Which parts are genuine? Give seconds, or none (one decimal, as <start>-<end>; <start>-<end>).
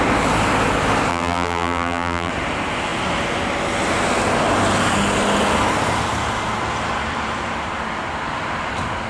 0.0-1.1; 2.3-9.1